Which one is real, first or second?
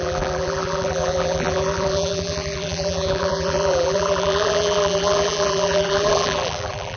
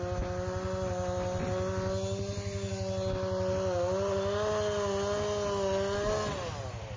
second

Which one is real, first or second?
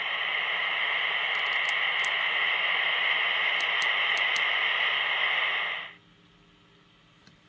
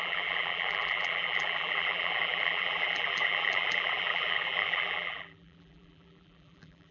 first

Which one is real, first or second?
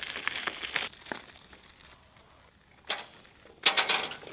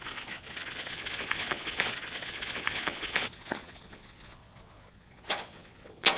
first